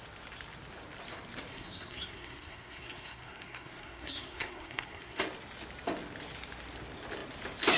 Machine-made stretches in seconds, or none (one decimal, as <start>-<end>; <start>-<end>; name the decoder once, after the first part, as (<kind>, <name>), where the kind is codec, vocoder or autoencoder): 1.5-5.2 (codec, SNAC)